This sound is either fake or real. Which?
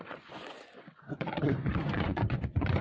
fake